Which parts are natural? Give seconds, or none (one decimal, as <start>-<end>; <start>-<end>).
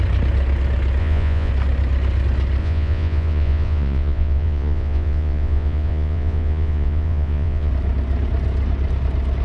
0.0-1.0; 1.5-2.6; 7.7-9.4